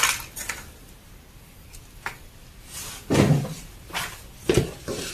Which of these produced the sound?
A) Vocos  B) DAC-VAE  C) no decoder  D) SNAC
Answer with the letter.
C